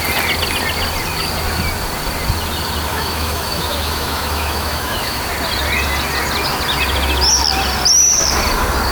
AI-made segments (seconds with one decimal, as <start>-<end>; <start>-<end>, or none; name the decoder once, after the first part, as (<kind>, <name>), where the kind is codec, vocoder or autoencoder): 2.9-5.2 (autoencoder, DAC-VAE)